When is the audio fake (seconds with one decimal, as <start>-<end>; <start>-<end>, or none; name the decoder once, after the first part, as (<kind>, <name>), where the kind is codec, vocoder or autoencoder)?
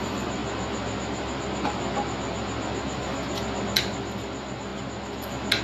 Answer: 0.0-0.4 (vocoder, BigVGAN v2); 3.8-4.7